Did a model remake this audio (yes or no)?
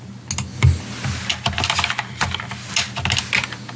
no